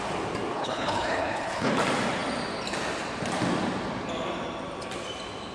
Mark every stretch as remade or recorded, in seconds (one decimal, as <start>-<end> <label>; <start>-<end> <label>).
0.0-0.5 recorded; 0.5-1.7 remade; 1.7-5.5 recorded

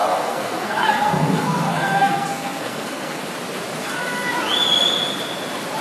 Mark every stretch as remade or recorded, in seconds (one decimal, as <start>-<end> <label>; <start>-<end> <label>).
0.0-3.2 remade; 3.2-3.8 recorded; 3.8-4.3 remade; 4.3-5.8 recorded